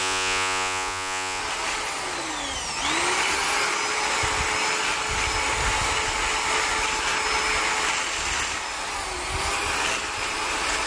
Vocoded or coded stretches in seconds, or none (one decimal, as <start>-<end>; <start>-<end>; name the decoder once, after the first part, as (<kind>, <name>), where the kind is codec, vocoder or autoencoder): 0.0-1.4 (vocoder, Vocos)